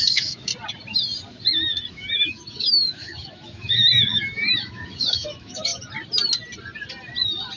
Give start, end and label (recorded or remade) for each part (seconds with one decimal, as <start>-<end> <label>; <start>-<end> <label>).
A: 0.0-0.5 remade; 0.5-1.9 recorded; 1.9-5.7 remade; 5.7-7.6 recorded